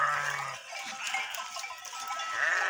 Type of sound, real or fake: real